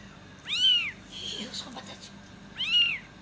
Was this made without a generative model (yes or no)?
yes